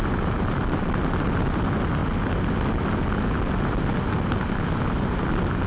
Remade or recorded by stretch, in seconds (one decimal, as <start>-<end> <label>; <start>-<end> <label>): 0.0-5.7 recorded